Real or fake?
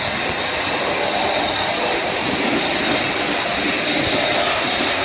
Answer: real